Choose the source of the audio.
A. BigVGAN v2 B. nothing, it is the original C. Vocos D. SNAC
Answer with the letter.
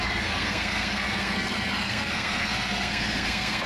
D